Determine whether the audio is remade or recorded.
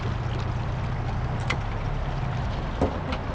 recorded